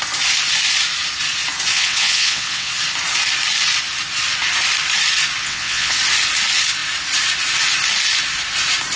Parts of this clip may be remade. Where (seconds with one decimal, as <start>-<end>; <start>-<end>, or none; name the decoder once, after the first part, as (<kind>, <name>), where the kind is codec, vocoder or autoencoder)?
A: 1.7-2.7 (vocoder, WaveNeXt); 5.4-6.0